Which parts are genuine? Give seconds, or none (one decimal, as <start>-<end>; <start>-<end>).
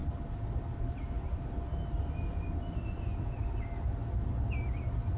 1.4-3.1; 3.7-5.2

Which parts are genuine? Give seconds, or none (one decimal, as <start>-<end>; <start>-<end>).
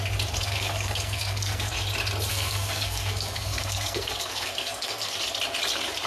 0.0-0.4; 1.7-2.3; 5.1-6.1